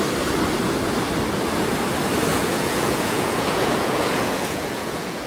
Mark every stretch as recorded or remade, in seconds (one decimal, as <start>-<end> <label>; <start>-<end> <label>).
0.0-2.3 recorded; 2.3-5.3 remade

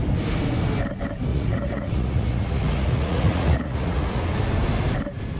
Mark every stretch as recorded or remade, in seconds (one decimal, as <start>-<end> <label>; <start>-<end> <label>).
0.0-1.3 recorded; 1.3-4.2 remade; 4.2-5.4 recorded

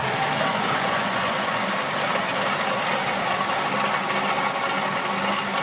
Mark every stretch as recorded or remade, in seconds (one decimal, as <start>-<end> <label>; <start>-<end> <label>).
0.0-0.5 recorded; 0.5-1.7 remade; 1.7-5.6 recorded

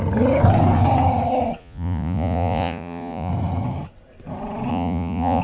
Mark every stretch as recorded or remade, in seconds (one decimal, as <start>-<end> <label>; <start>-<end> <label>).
0.0-1.6 recorded; 1.6-3.3 remade; 3.3-4.7 recorded; 4.7-5.4 remade

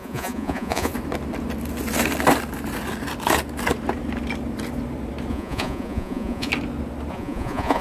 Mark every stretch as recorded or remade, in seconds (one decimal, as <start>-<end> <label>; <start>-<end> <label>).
0.0-0.9 remade; 0.9-5.3 recorded; 5.3-6.5 remade; 6.5-7.1 recorded; 7.1-7.8 remade

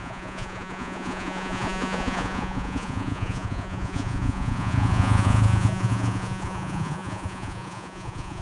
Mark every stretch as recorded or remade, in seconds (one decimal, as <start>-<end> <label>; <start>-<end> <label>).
0.0-8.4 remade

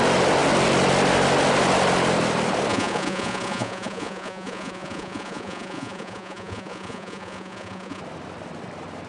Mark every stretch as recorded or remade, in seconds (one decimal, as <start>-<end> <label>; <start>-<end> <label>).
0.0-2.7 recorded; 2.7-8.0 remade; 8.0-9.1 recorded

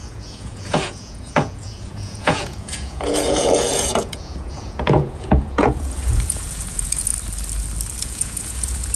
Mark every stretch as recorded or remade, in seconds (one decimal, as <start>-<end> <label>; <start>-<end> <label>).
0.0-7.1 remade; 7.1-8.0 recorded; 8.0-9.0 remade